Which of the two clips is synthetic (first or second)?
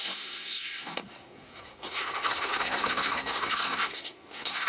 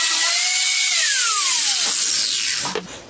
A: first